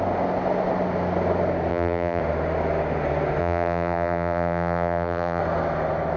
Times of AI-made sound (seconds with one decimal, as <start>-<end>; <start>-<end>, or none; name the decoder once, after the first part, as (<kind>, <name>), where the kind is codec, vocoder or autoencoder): 1.7-2.2 (vocoder, BigVGAN v2); 3.4-5.4